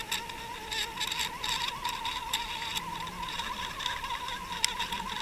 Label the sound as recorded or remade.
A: recorded